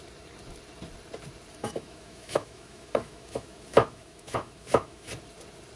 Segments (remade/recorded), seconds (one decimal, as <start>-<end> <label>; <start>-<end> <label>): 0.0-1.6 recorded; 1.6-5.1 remade; 5.1-5.8 recorded